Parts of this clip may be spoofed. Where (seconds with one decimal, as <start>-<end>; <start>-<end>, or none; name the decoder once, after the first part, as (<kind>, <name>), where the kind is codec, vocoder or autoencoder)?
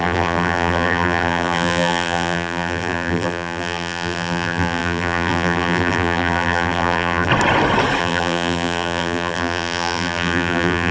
0.0-7.3 (vocoder, BigVGAN v2); 8.0-10.9